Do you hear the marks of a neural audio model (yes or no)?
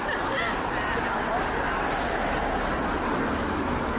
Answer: no